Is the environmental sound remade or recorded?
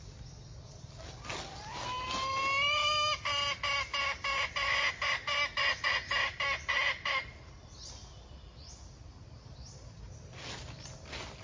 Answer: recorded